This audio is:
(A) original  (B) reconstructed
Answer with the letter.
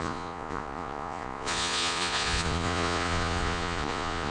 B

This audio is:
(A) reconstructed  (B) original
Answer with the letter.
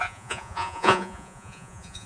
A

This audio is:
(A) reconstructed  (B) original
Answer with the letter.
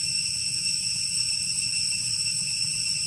A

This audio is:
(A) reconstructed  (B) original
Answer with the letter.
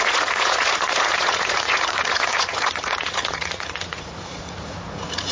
A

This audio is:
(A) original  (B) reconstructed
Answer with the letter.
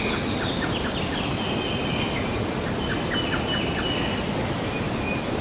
A